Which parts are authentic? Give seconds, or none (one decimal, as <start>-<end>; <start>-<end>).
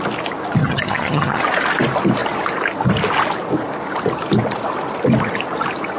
0.0-0.6; 1.4-6.0